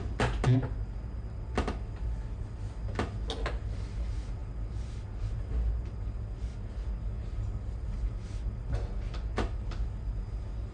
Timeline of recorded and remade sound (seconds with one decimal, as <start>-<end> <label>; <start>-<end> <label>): 0.0-10.7 recorded